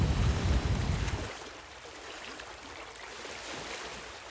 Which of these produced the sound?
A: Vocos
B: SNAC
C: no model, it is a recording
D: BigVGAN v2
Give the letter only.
D